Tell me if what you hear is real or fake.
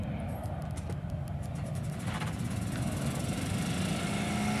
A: real